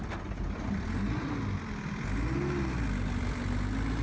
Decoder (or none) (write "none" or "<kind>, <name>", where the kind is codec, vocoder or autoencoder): none